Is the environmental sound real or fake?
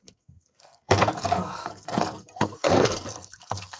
fake